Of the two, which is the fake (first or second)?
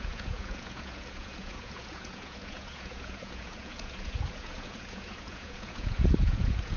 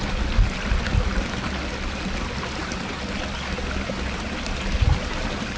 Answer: first